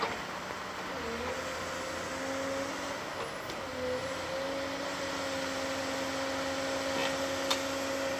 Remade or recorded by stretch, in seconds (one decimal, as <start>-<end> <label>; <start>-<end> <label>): 0.0-8.2 recorded